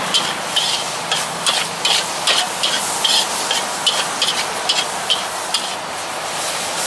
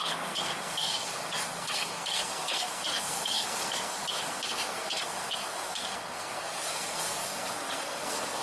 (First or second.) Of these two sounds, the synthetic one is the second